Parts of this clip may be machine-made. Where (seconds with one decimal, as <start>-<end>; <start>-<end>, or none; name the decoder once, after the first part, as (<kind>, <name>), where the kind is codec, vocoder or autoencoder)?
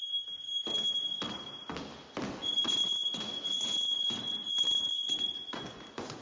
2.4-6.2 (vocoder, Vocos)